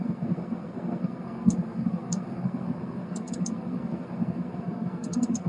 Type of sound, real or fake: fake